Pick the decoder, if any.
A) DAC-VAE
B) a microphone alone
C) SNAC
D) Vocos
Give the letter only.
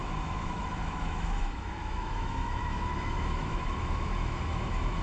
A